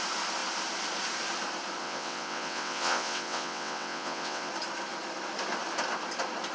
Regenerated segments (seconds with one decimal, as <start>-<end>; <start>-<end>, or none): 1.8-4.5